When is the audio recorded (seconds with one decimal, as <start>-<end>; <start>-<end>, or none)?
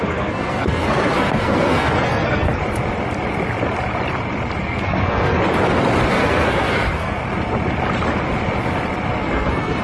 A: 2.6-4.6; 5.4-6.1; 7.2-9.1